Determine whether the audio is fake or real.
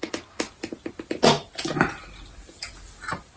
real